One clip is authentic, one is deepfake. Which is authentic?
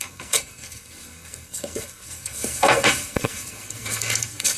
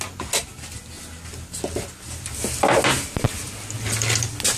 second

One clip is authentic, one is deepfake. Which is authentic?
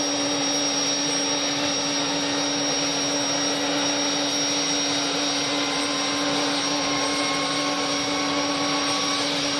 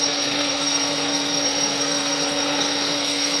first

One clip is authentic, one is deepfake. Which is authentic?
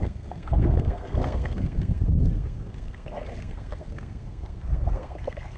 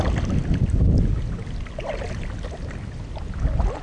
second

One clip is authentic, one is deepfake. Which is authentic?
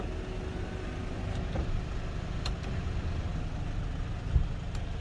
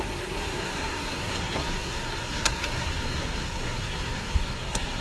first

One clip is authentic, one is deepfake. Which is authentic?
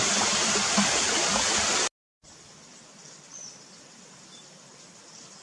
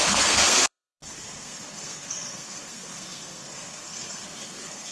first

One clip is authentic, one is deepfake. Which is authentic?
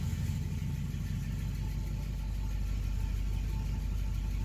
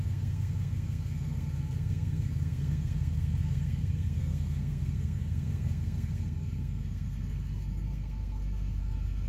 first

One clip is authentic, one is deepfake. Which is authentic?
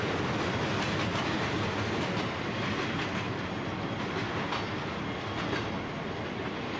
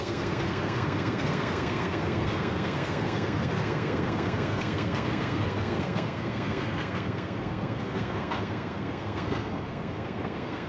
first